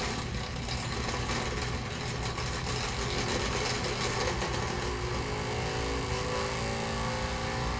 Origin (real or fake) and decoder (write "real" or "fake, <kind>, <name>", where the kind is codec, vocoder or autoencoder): real